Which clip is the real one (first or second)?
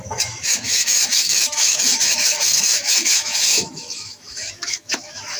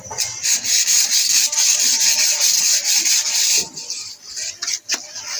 second